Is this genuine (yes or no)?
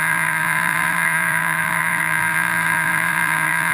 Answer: no